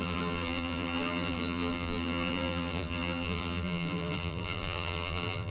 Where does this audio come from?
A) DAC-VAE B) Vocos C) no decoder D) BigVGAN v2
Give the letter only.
D